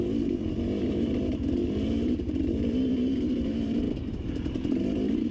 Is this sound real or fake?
fake